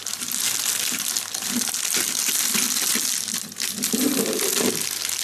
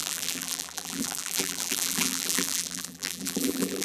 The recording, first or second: first